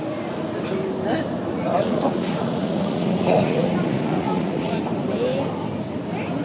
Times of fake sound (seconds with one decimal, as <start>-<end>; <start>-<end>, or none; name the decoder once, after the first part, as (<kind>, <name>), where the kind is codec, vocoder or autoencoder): 1.5-4.8 (vocoder, Vocos)